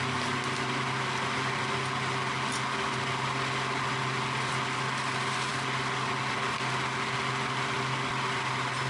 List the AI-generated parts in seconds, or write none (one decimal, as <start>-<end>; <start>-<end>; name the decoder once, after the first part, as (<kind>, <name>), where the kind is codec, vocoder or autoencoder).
none